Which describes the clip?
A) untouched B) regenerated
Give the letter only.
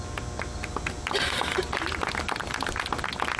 A